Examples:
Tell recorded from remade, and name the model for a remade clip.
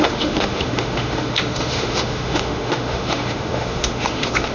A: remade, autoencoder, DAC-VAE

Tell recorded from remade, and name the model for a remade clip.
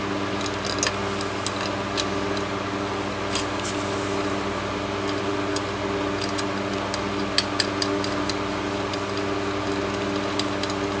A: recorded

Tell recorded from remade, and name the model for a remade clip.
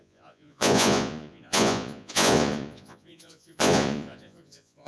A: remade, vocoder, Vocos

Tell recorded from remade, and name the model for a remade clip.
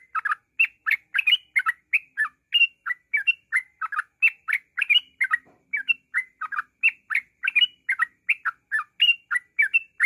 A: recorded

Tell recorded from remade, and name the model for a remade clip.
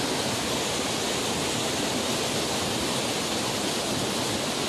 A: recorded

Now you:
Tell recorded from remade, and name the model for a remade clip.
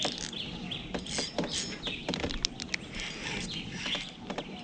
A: recorded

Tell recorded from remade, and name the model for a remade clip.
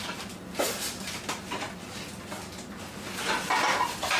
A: recorded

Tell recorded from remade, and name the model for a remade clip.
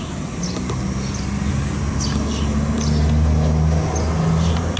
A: recorded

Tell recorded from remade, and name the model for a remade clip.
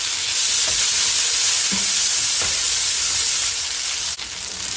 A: recorded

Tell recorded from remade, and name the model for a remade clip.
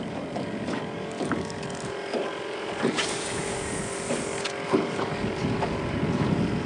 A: remade, codec, DAC